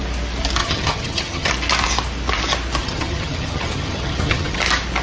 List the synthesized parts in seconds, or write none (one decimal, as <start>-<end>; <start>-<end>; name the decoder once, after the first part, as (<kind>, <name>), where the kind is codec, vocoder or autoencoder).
0.6-1.5 (vocoder, HiFi-GAN); 2.8-4.6